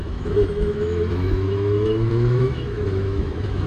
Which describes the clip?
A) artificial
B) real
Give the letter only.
A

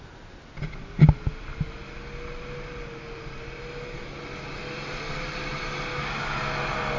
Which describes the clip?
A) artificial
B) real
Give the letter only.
B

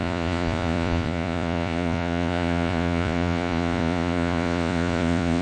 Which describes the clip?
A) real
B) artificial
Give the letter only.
B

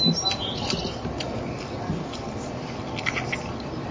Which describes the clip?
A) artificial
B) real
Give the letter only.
B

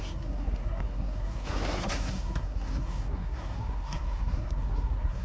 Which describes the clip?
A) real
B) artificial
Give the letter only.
B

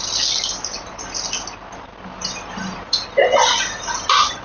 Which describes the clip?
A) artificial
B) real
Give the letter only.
B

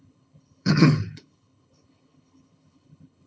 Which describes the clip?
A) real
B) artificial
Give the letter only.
B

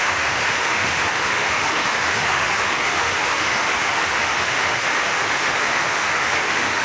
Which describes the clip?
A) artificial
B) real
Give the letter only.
A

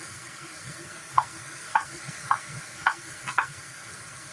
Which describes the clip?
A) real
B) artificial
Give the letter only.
B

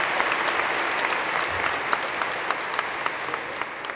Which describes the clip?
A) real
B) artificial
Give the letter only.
A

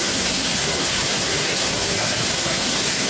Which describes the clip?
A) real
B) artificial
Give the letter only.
B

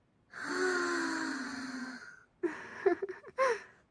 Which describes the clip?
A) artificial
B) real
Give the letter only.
B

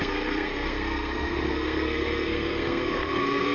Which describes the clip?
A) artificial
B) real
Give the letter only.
A